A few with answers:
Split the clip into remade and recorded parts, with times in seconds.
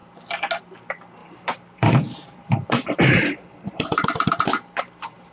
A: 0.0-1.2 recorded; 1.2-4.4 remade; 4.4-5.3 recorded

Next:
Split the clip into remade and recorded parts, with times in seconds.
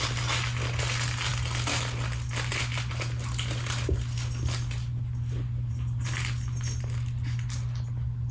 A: 0.0-8.3 recorded